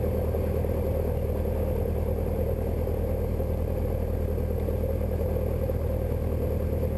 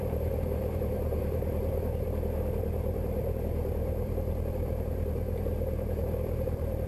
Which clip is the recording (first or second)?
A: first